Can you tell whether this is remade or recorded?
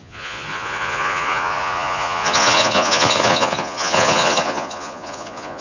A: remade